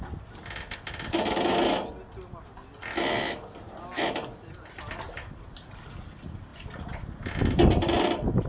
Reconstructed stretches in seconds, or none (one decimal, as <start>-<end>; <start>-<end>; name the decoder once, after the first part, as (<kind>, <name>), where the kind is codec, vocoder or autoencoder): none